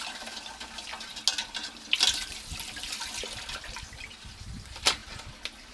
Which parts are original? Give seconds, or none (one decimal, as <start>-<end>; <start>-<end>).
0.0-5.7